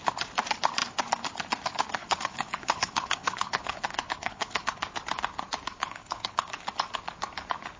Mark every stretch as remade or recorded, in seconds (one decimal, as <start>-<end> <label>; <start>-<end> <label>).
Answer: 0.0-2.0 recorded; 2.0-4.7 remade; 4.7-5.8 recorded; 5.8-6.7 remade; 6.7-7.8 recorded